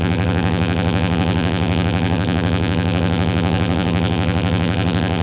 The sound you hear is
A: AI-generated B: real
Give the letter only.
A